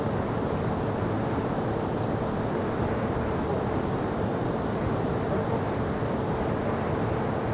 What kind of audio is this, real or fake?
fake